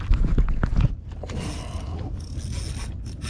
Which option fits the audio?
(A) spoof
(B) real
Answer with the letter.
B